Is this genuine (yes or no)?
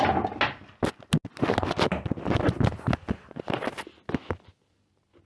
yes